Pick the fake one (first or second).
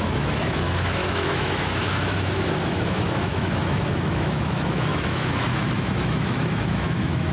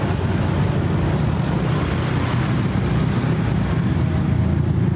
first